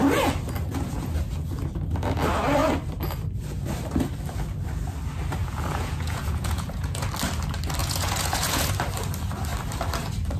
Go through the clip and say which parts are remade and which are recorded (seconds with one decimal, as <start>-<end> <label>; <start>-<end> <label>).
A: 0.0-5.4 recorded; 5.4-7.0 remade; 7.0-7.8 recorded; 7.8-8.7 remade; 8.7-10.4 recorded